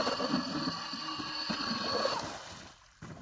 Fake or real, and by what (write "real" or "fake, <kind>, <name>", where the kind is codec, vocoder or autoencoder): real